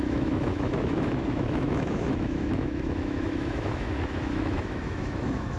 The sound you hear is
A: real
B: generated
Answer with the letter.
B